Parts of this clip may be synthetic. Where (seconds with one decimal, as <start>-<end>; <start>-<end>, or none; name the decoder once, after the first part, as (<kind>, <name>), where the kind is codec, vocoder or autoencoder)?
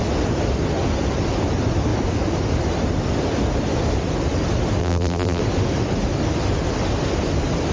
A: 4.8-5.4 (vocoder, BigVGAN v2)